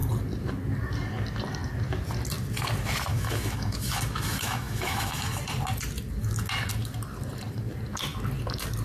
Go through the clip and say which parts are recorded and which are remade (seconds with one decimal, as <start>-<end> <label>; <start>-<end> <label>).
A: 0.0-3.1 recorded; 3.1-5.4 remade; 5.4-8.8 recorded